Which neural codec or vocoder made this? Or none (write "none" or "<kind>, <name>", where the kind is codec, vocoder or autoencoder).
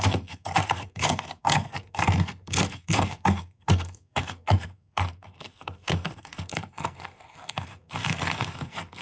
codec, SNAC